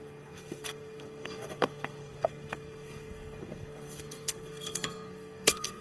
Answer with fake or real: fake